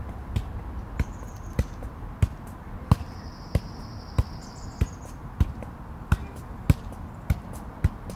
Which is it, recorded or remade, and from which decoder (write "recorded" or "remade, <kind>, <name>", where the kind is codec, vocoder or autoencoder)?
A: recorded